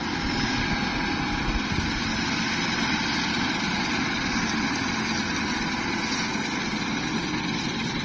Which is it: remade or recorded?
recorded